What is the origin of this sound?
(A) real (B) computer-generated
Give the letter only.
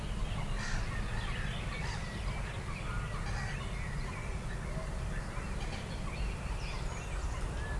A